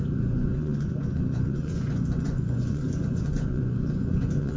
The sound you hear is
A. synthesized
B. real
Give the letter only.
A